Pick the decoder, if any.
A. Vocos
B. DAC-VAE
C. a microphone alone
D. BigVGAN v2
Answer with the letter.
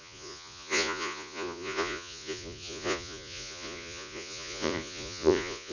A